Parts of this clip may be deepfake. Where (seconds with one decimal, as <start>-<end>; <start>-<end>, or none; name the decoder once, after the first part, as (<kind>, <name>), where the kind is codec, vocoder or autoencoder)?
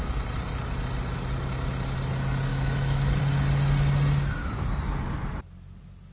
2.5-3.2 (autoencoder, DAC-VAE)